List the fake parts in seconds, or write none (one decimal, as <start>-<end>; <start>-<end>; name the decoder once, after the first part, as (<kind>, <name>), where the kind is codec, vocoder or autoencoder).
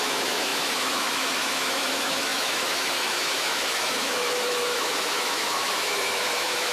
0.0-6.7 (autoencoder, DAC-VAE)